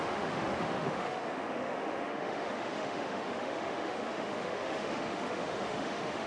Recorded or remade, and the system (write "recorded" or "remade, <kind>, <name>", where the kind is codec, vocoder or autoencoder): remade, autoencoder, DAC-VAE